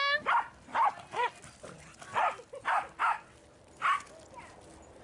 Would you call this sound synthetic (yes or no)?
no